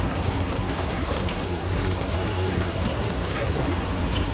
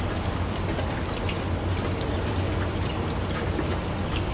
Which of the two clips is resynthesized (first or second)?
first